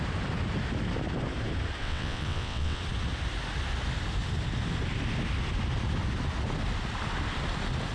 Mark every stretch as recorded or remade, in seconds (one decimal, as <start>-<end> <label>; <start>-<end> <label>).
0.0-1.8 recorded; 1.8-2.8 remade; 2.8-7.9 recorded